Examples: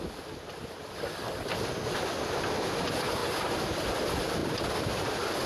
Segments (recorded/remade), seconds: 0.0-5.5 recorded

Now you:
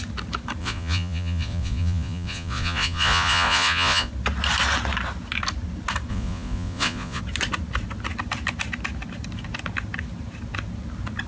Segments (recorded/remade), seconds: 0.0-0.6 recorded; 0.6-4.1 remade; 4.1-6.1 recorded; 6.1-7.2 remade; 7.2-11.3 recorded

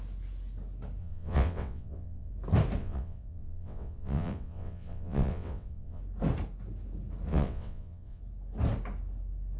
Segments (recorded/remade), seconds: 0.0-1.0 recorded; 1.0-2.3 remade; 2.3-2.8 recorded; 2.8-6.0 remade; 6.0-7.3 recorded; 7.3-8.2 remade; 8.2-9.6 recorded

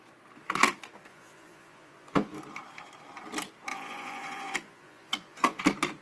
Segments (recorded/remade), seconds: 0.0-1.1 recorded; 1.1-2.4 remade; 2.4-3.7 recorded; 3.7-5.6 remade; 5.6-6.0 recorded